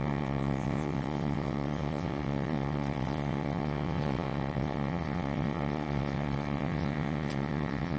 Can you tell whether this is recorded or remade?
remade